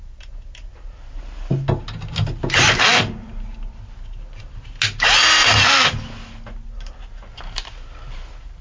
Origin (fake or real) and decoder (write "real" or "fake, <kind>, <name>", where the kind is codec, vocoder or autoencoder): real